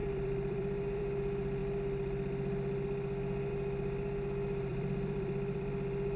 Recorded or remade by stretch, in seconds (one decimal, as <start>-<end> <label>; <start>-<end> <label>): 0.0-1.0 remade; 1.0-4.7 recorded; 4.7-5.7 remade; 5.7-6.2 recorded